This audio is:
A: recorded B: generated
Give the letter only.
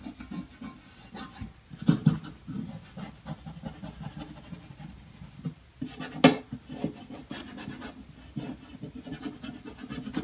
A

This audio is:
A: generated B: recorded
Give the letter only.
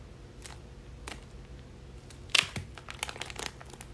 B